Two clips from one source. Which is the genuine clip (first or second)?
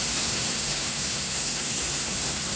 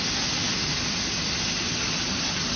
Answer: second